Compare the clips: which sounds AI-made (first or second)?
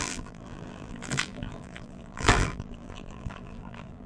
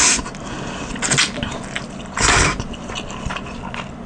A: first